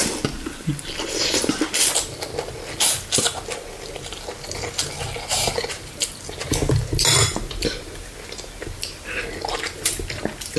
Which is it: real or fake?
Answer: real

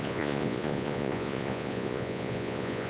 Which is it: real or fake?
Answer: fake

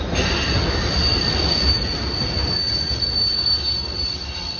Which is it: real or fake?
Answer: real